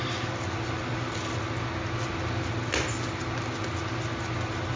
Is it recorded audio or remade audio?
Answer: recorded